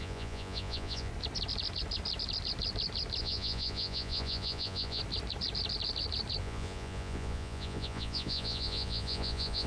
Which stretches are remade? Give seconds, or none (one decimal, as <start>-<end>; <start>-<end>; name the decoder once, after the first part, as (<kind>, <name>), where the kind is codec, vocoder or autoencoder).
0.0-1.1 (vocoder, Vocos); 3.2-5.0; 6.4-9.7